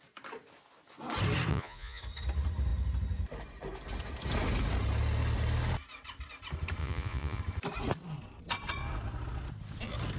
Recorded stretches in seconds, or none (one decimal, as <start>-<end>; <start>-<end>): 0.0-1.5; 2.0-6.8; 7.4-10.2